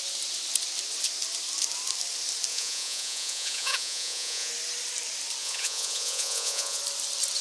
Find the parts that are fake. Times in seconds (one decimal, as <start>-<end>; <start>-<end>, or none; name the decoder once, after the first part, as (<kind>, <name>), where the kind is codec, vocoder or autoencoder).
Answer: 2.5-4.5 (vocoder, Vocos); 5.4-6.8